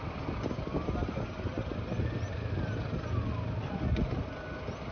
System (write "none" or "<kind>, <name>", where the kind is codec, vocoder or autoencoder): none